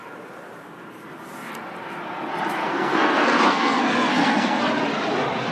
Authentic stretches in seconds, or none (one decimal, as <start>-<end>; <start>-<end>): 0.0-2.6; 4.6-5.5